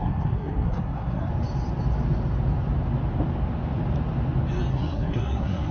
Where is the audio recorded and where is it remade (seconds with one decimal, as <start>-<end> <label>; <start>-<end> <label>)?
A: 0.0-1.3 remade; 1.3-4.7 recorded; 4.7-5.7 remade